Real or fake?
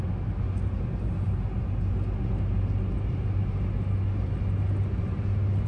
real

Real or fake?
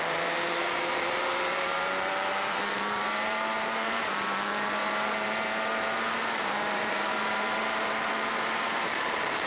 fake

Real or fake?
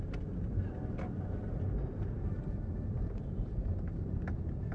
fake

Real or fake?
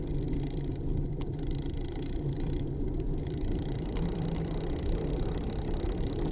fake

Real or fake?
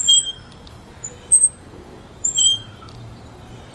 fake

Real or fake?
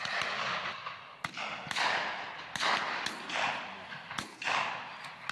real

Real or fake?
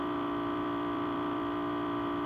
fake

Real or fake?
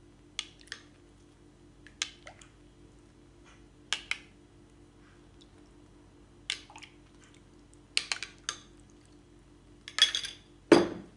real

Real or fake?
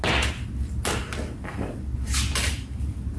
real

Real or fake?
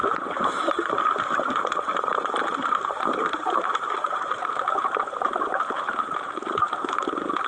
fake